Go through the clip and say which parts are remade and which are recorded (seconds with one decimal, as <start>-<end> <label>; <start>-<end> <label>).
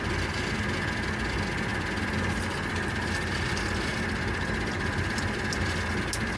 0.0-6.4 recorded